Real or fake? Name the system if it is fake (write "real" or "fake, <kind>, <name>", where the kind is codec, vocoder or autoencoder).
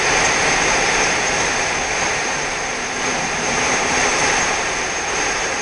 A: fake, vocoder, BigVGAN v2